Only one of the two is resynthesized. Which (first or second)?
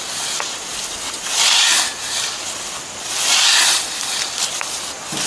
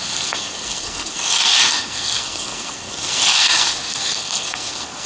second